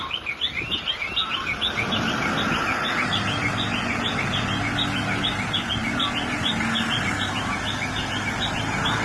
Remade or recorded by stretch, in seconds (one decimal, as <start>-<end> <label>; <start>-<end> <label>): 0.0-9.0 recorded